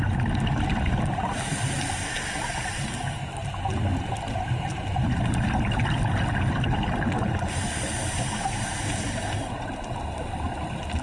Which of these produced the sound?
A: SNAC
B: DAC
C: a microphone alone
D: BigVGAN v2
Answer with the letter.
C